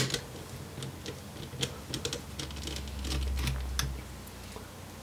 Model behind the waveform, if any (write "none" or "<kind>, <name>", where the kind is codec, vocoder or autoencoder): none